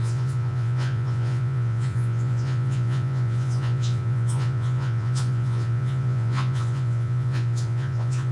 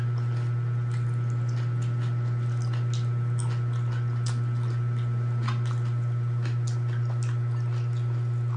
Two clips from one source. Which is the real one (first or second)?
second